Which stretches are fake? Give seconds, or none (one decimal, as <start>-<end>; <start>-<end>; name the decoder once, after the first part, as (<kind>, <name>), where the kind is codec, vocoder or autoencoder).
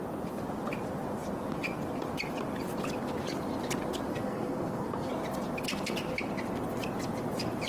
4.1-5.1 (codec, SNAC)